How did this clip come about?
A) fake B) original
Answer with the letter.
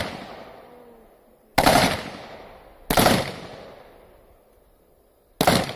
B